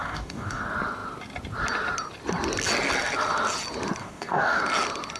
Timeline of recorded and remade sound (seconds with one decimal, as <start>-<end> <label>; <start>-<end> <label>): 0.0-0.6 remade; 0.6-4.0 recorded; 4.0-4.6 remade; 4.6-5.2 recorded